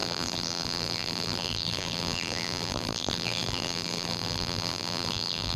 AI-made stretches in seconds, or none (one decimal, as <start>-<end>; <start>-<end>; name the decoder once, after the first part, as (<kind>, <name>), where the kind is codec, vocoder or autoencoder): 0.0-5.6 (vocoder, BigVGAN v2)